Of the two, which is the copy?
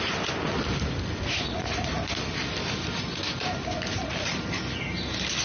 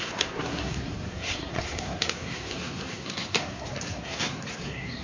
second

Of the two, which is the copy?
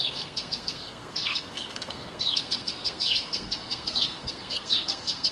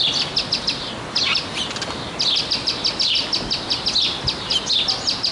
first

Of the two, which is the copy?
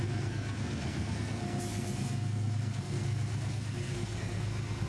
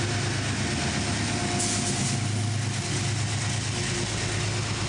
first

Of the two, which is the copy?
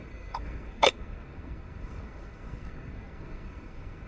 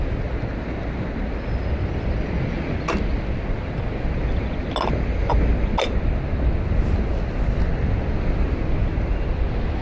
first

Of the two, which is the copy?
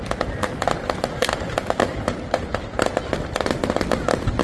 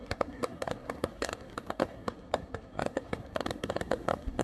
second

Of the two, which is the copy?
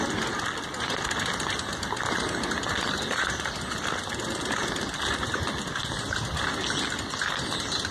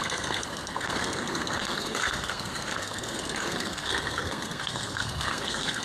second